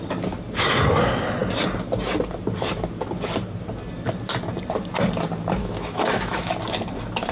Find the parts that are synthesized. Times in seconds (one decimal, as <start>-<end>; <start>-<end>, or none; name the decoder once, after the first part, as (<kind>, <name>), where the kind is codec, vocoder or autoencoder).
5.6-6.5 (autoencoder, DAC-VAE)